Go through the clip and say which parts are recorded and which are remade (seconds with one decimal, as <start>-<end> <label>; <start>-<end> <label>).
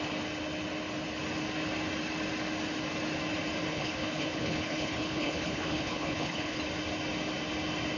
0.0-3.7 recorded; 3.7-6.6 remade; 6.6-8.0 recorded